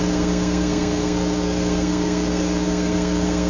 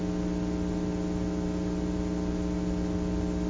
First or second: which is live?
second